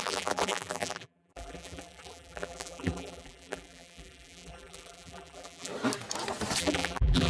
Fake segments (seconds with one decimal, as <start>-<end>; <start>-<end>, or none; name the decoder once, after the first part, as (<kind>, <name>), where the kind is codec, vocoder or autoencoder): 0.0-5.7 (vocoder, BigVGAN v2); 6.6-7.3